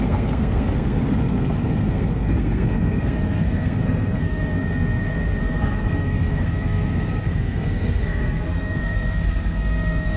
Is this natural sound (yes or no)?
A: no